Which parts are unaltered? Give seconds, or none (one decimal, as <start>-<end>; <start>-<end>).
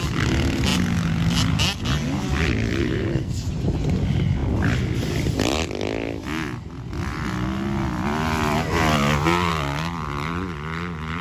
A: 0.0-2.8; 3.5-11.2